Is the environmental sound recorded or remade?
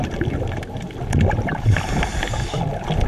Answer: recorded